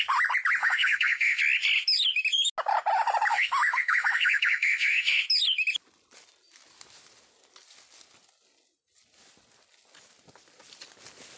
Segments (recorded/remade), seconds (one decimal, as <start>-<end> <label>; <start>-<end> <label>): 0.0-0.6 recorded; 0.6-1.4 remade; 1.4-3.3 recorded; 3.3-5.2 remade; 5.2-11.4 recorded